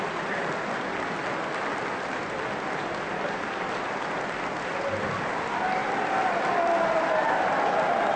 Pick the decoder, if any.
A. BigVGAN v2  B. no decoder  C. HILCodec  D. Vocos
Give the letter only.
B